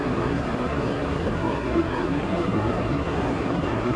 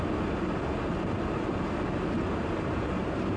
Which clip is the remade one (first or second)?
first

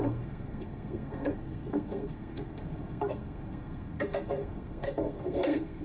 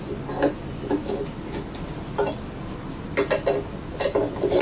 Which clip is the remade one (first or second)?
first